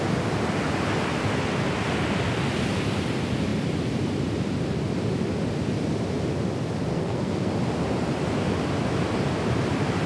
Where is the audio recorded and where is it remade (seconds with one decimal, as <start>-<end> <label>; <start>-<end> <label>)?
0.0-6.9 recorded; 6.9-7.5 remade; 7.5-10.1 recorded